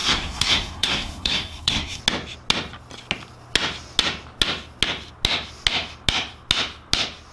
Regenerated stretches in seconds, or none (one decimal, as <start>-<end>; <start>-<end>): 0.0-2.0